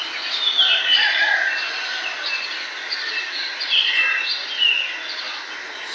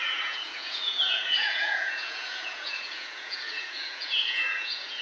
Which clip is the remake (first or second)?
second